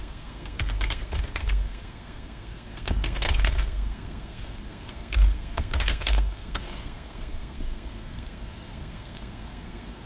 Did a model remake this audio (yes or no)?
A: yes